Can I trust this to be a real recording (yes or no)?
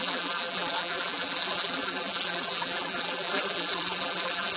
no